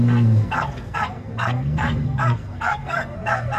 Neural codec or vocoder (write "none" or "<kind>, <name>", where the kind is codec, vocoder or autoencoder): codec, SNAC